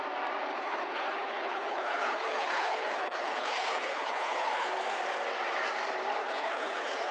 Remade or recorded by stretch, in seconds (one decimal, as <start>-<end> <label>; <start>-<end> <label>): 0.0-0.5 recorded; 0.5-4.7 remade; 4.7-6.2 recorded; 6.2-7.1 remade